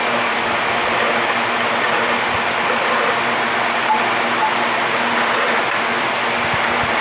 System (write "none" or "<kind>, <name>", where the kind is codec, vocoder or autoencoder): none